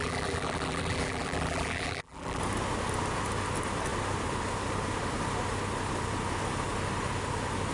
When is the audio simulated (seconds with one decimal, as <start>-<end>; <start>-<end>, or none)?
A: 0.0-2.4